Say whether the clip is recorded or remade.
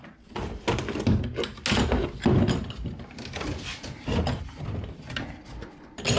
recorded